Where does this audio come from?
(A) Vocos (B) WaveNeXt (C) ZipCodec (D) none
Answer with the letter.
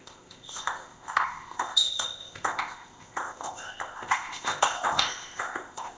C